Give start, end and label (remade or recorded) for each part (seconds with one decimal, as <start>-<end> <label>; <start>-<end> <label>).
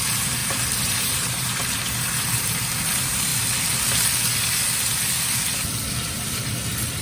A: 0.0-3.3 remade; 3.3-6.1 recorded; 6.1-7.0 remade